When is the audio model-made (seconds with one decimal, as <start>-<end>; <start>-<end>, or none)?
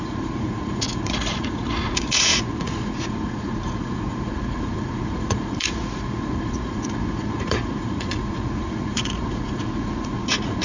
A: 0.0-10.6